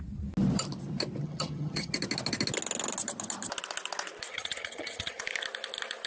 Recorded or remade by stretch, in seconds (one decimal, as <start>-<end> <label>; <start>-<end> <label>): 0.0-1.2 recorded; 1.2-1.9 remade; 1.9-4.3 recorded; 4.3-5.2 remade; 5.2-6.1 recorded

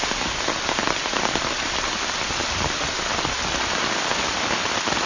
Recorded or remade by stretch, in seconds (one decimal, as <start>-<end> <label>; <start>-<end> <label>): 0.0-5.1 recorded

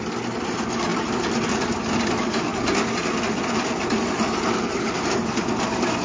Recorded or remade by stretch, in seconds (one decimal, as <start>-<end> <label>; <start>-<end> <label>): 0.0-6.0 recorded

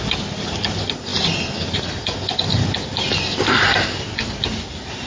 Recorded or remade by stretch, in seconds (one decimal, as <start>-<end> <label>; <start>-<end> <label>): 0.0-5.1 recorded

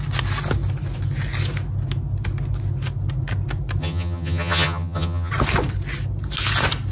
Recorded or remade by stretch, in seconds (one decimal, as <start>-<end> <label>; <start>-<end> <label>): 0.0-3.8 recorded; 3.8-5.3 remade; 5.3-6.9 recorded

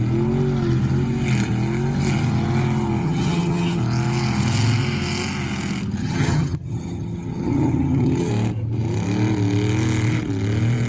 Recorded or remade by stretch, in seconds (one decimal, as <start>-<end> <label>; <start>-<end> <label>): 0.0-3.0 recorded; 3.0-3.8 remade; 3.8-6.0 recorded; 6.0-8.3 remade; 8.3-10.9 recorded

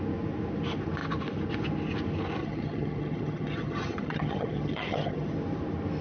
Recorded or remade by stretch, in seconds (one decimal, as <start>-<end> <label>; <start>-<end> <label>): 0.0-2.4 recorded; 2.4-5.3 remade; 5.3-6.0 recorded